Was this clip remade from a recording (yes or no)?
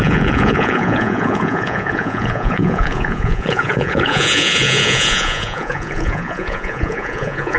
yes